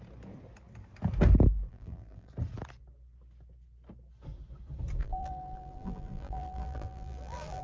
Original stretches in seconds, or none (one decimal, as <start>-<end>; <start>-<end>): 0.0-1.7; 2.3-5.0